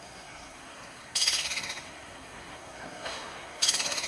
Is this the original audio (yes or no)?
no